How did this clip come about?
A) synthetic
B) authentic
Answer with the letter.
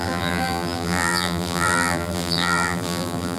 A